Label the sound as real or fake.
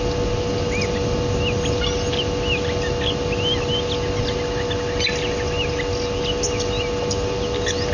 real